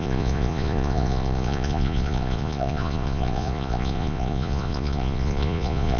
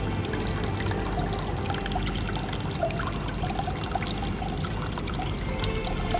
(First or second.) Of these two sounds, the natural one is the second